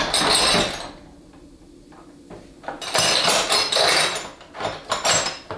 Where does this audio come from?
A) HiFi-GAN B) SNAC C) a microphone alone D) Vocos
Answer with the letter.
C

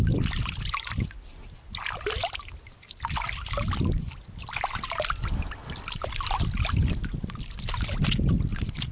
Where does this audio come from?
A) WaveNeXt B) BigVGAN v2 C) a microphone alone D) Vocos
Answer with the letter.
C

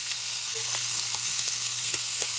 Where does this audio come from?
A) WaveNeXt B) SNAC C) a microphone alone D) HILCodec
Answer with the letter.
B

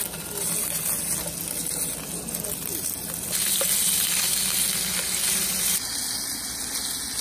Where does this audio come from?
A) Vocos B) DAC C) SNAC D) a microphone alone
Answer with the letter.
D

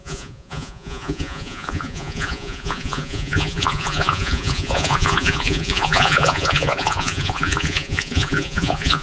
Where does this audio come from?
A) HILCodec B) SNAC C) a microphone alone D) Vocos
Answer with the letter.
D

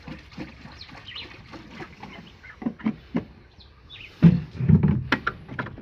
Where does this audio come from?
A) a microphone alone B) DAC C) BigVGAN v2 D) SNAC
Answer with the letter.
A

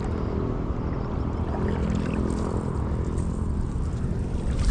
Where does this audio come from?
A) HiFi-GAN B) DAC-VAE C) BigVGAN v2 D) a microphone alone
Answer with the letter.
D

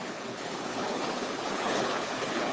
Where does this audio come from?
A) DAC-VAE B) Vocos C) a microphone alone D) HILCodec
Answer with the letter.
D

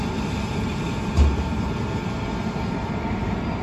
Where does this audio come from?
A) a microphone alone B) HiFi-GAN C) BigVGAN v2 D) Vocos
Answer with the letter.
C